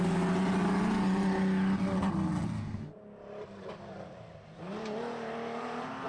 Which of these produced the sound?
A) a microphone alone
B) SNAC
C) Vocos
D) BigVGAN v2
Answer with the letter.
A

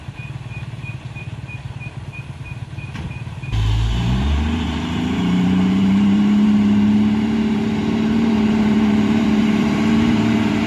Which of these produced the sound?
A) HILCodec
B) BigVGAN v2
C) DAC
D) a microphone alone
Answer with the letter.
B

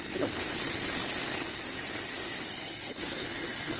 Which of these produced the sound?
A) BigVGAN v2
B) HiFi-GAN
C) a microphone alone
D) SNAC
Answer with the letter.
C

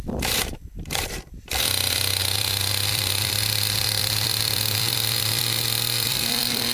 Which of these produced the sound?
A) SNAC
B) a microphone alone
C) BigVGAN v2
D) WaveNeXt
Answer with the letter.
C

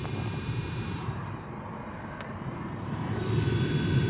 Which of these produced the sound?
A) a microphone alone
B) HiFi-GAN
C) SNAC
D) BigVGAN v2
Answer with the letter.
D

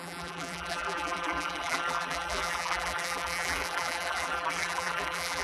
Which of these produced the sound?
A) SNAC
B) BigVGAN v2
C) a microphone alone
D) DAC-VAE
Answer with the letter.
B